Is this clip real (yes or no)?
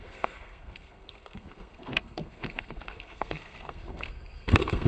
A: no